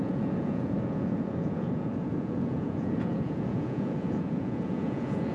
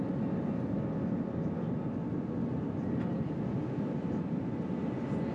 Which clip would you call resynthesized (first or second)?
first